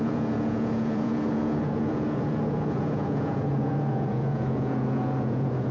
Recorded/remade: remade